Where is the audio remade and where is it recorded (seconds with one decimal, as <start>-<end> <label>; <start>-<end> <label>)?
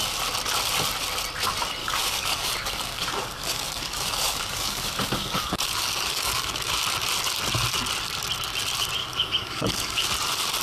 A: 0.0-1.8 recorded; 1.8-6.7 remade; 6.7-9.0 recorded; 9.0-10.1 remade; 10.1-10.6 recorded